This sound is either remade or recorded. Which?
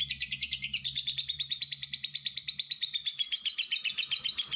remade